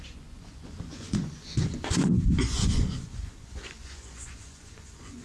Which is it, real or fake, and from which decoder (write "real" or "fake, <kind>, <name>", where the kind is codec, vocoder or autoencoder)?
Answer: fake, vocoder, Vocos